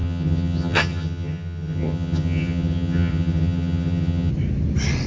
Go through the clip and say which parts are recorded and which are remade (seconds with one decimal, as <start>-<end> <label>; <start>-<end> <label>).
0.0-4.3 remade; 4.3-5.1 recorded